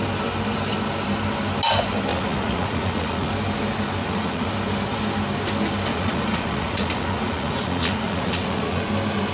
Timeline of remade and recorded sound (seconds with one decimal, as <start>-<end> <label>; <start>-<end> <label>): 0.0-2.1 recorded; 2.1-3.3 remade; 3.3-4.0 recorded; 4.0-4.5 remade; 4.5-5.9 recorded; 5.9-8.9 remade; 8.9-9.3 recorded